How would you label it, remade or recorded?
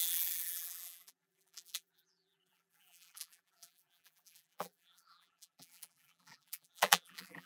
remade